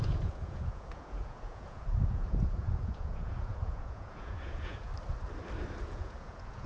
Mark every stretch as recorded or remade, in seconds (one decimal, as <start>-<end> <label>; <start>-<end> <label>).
0.0-4.9 remade; 4.9-5.8 recorded; 5.8-6.7 remade